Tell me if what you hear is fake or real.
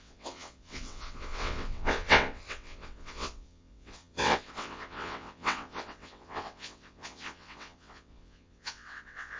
fake